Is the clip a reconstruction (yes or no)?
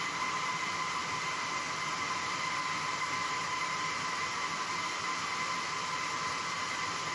no